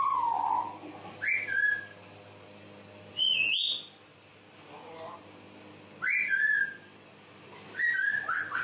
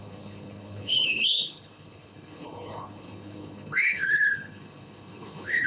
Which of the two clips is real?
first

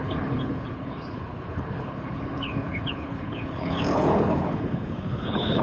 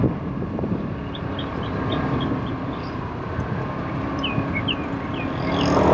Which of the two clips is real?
second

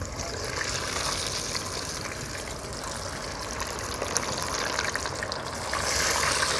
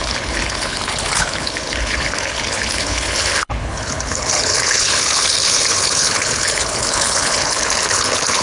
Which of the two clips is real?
first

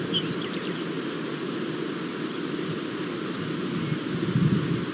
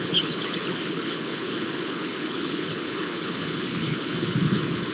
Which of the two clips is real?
first